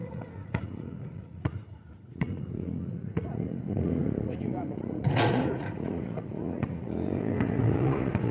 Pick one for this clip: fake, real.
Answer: fake